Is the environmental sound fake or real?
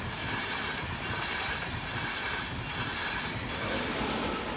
real